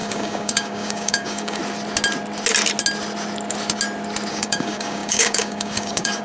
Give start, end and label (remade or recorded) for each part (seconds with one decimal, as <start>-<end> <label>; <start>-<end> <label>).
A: 0.0-1.6 remade; 1.6-4.3 recorded; 4.3-6.2 remade